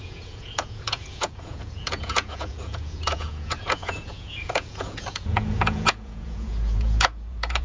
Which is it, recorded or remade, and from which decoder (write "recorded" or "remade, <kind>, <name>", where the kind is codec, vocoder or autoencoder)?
remade, vocoder, Vocos